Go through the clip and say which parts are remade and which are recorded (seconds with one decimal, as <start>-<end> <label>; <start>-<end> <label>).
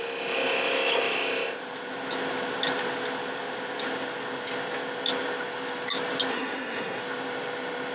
0.0-6.3 recorded; 6.3-7.0 remade; 7.0-7.9 recorded